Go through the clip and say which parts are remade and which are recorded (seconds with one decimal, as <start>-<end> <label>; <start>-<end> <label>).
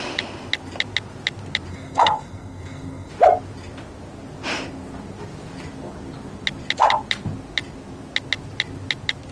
0.0-1.7 recorded; 1.7-3.1 remade; 3.1-9.3 recorded